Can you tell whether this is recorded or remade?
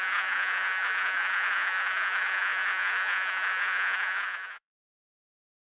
remade